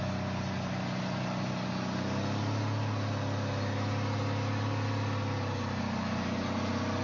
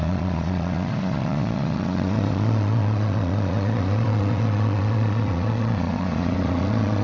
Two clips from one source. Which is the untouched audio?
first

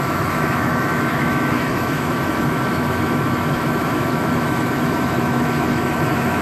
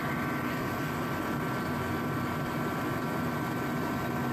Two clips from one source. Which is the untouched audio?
second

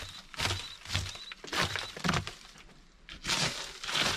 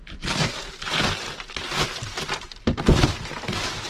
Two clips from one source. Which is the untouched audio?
first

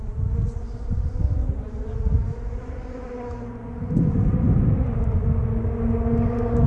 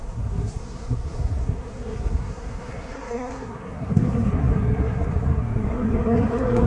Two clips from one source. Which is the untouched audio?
first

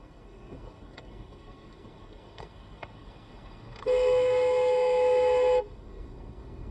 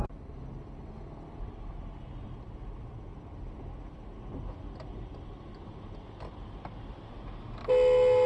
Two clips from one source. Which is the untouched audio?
second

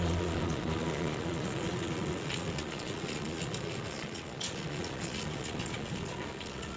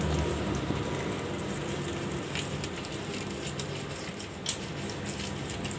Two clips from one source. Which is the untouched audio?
second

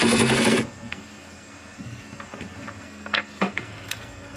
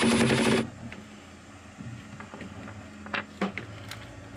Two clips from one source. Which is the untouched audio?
second